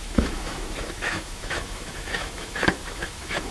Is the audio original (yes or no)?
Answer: no